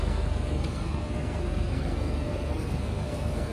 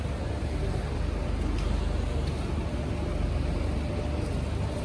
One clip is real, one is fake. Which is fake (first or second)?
first